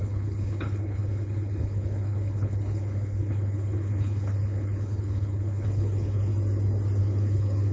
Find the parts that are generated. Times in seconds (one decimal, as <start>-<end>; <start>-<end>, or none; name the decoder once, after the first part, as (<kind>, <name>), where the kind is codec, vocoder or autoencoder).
0.0-6.3 (codec, HILCodec); 7.0-7.7